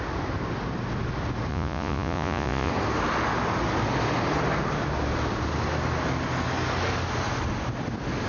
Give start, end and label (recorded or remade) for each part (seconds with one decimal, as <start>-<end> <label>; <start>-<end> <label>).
0.0-1.5 recorded; 1.5-2.7 remade; 2.7-8.3 recorded